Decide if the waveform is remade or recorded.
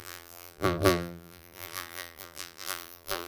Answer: remade